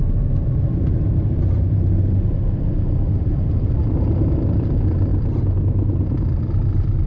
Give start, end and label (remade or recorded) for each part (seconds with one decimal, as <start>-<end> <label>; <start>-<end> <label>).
0.0-7.1 remade